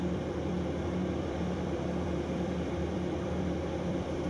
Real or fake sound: fake